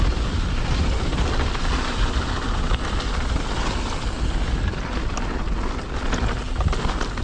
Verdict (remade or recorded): recorded